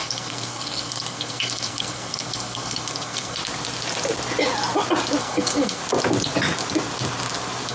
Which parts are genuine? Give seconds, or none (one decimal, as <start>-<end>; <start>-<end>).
3.4-5.2; 5.8-7.7